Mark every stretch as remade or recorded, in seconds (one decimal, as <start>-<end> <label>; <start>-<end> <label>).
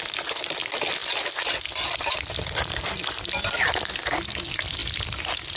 0.0-1.0 recorded; 1.0-3.9 remade; 3.9-5.6 recorded